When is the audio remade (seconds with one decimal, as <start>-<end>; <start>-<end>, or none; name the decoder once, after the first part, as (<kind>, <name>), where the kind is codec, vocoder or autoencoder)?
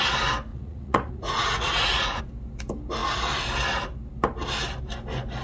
0.5-2.2 (vocoder, Vocos)